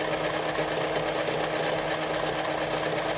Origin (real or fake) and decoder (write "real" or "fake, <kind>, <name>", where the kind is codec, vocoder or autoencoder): real